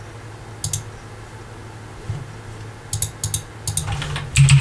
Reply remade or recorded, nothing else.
recorded